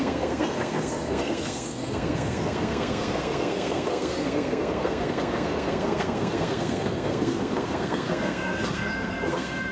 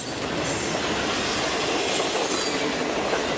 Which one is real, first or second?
second